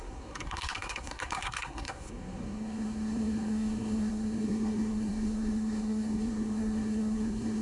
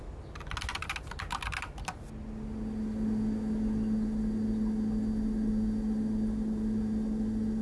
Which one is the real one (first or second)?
second